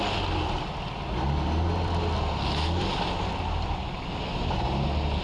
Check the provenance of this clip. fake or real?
real